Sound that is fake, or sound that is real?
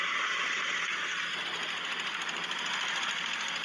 real